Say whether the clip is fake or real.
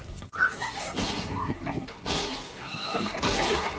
fake